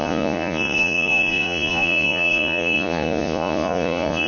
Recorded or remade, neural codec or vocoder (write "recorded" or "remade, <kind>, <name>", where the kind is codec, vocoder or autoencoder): remade, vocoder, Vocos